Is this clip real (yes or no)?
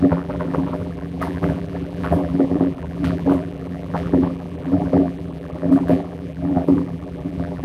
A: no